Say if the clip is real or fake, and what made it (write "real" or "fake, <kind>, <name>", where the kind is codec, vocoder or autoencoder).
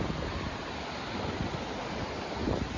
real